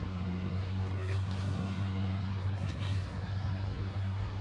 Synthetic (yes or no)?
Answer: yes